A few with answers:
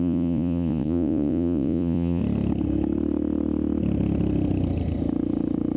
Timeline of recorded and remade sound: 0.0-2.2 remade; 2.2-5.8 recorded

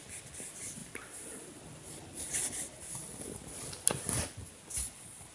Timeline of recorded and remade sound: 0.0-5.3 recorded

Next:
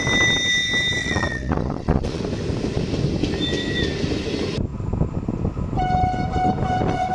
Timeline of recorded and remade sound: 0.0-1.0 recorded; 1.0-2.2 remade; 2.2-7.1 recorded